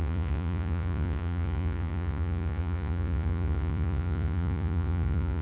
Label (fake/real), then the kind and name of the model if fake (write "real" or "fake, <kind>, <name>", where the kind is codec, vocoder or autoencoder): fake, vocoder, Vocos